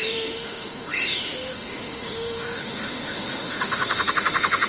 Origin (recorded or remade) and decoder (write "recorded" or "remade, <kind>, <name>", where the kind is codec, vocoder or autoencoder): remade, autoencoder, DAC-VAE